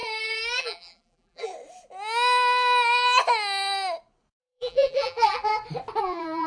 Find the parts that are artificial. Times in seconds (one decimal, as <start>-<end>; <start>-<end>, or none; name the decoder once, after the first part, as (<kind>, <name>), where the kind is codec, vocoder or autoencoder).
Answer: 0.6-1.5 (vocoder, BigVGAN v2); 4.4-5.5; 6.0-6.5